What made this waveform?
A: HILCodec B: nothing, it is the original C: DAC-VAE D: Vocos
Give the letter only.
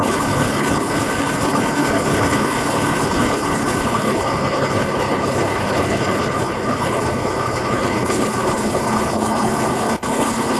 A